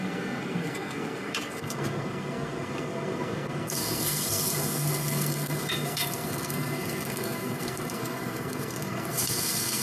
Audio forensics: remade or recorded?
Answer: remade